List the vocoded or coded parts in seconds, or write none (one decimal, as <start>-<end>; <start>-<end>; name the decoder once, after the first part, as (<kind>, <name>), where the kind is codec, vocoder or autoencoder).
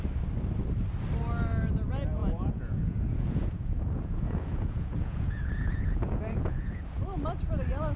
2.2-7.0 (vocoder, Vocos)